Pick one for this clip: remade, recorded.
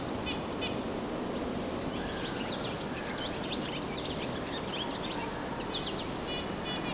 recorded